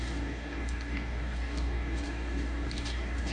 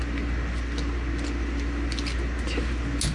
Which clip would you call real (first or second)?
second